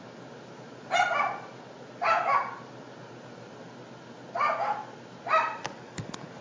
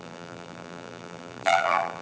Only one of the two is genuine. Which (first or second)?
first